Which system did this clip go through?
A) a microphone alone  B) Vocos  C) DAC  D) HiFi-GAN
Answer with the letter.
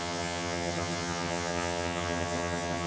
D